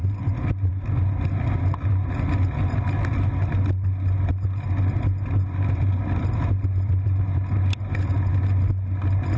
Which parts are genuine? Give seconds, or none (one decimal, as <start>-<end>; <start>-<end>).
0.0-9.4